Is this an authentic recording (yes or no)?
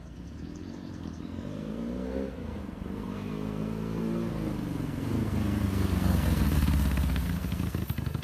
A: no